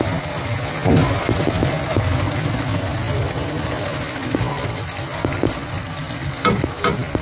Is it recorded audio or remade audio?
recorded